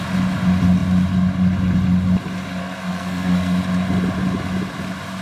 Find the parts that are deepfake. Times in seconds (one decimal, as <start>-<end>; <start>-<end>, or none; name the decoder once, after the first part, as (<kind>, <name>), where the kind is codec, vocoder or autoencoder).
2.6-3.6 (codec, SNAC)